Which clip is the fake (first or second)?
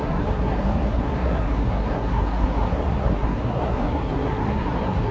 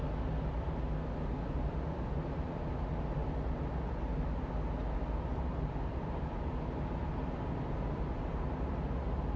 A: first